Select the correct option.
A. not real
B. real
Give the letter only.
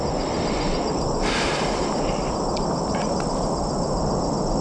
B